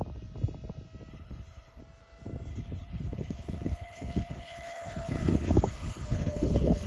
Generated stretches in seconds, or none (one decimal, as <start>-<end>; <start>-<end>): 1.1-1.8; 2.5-6.9